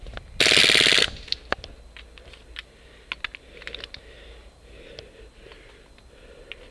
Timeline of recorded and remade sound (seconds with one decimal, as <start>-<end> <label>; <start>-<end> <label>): 0.0-6.7 recorded